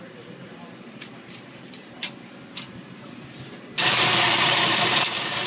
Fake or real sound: fake